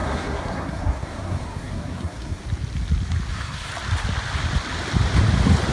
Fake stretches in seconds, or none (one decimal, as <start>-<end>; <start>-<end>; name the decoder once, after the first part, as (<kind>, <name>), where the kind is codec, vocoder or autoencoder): 0.0-2.4 (codec, SNAC); 3.3-3.7